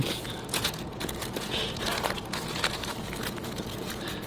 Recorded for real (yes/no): no